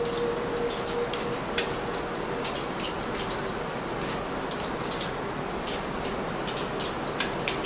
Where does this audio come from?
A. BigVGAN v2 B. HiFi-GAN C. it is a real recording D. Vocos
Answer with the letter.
C